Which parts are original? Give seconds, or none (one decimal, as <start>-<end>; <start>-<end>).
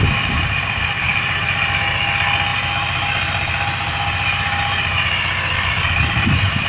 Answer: 0.0-6.7